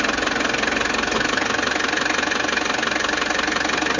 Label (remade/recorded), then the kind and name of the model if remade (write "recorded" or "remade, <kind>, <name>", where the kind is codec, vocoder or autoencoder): recorded